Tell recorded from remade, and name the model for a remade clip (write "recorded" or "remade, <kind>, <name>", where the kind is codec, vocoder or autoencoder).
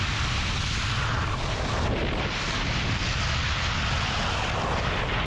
recorded